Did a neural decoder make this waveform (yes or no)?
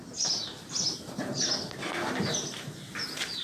no